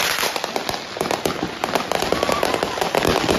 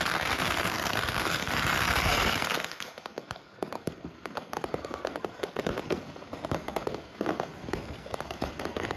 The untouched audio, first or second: first